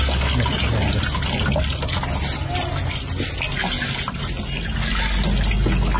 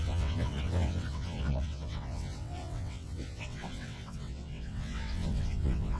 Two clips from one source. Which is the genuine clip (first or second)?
first